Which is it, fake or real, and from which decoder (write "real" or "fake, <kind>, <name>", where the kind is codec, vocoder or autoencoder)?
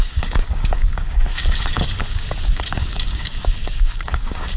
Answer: fake, codec, DAC